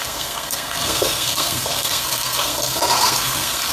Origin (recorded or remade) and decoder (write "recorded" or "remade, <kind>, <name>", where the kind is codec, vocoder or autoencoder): remade, codec, SNAC